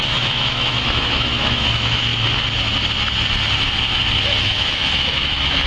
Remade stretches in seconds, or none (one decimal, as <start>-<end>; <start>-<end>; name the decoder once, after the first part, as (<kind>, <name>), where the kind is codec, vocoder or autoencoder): 0.0-2.1 (autoencoder, DAC-VAE); 4.4-5.7